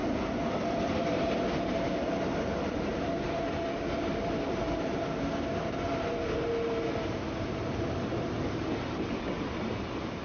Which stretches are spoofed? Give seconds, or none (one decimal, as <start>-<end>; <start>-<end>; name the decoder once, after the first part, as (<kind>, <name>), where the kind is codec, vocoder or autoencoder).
none